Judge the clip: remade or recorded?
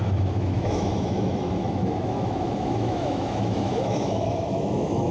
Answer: remade